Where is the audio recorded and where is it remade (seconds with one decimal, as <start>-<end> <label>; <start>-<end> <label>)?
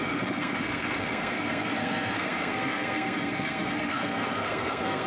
0.0-5.1 remade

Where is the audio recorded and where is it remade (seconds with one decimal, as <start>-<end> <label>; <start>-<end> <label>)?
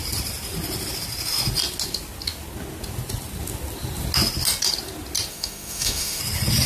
0.0-5.3 recorded; 5.3-6.2 remade; 6.2-6.7 recorded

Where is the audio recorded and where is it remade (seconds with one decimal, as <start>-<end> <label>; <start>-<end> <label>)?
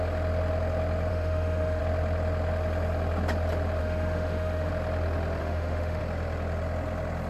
0.0-1.1 recorded; 1.1-1.8 remade; 1.8-3.8 recorded; 3.8-4.7 remade; 4.7-5.4 recorded; 5.4-6.0 remade; 6.0-7.3 recorded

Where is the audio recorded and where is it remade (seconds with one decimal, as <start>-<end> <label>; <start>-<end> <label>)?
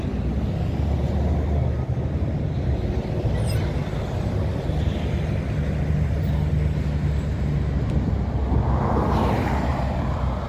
0.0-9.7 recorded; 9.7-10.5 remade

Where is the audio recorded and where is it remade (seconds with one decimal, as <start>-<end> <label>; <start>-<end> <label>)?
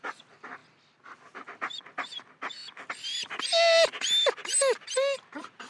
0.0-5.7 recorded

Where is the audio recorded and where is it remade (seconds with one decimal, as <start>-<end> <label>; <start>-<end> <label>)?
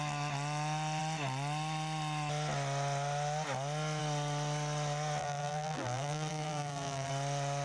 0.0-5.2 recorded; 5.2-7.1 remade; 7.1-7.6 recorded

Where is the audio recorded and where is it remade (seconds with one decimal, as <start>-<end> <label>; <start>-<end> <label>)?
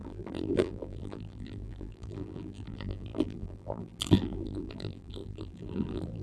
0.0-6.2 remade